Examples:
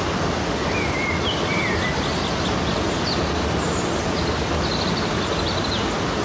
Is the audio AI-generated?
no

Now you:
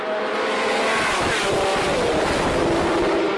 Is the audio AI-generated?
no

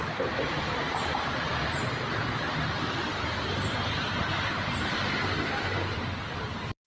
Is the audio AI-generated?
yes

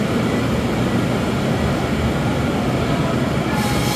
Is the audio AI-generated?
no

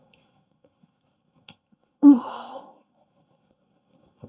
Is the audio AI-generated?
yes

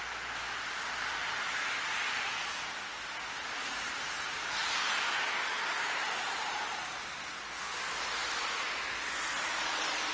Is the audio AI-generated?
no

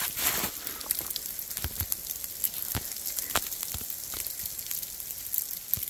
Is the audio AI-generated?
no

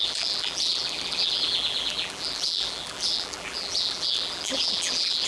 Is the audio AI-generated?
yes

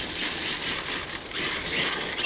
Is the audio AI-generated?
no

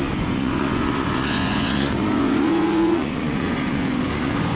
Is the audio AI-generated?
yes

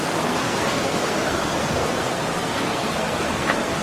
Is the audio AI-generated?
yes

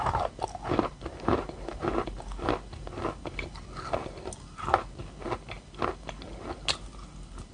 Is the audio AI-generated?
no